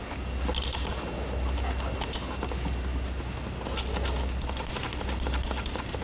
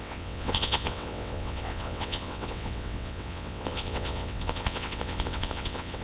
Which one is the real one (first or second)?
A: first